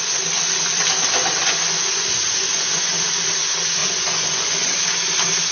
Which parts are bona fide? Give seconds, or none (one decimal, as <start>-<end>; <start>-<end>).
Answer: 0.0-1.4; 2.9-3.8; 4.7-5.5